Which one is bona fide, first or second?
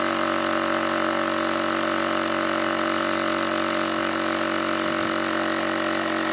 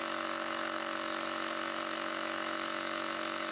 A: first